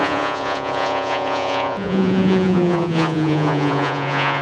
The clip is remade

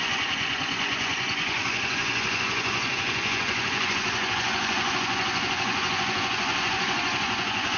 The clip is remade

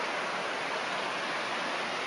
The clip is recorded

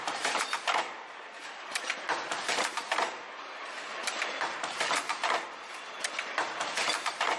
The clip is remade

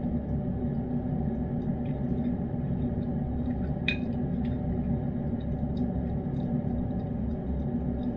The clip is recorded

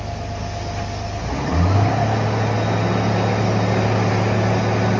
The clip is recorded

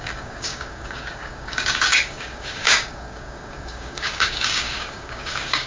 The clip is remade